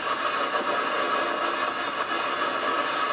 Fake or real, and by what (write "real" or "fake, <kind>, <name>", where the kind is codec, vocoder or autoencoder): real